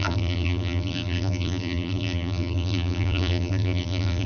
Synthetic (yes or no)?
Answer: yes